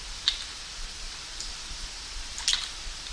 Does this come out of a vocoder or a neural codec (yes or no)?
yes